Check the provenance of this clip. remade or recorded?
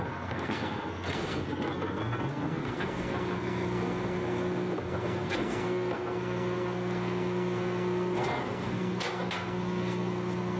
remade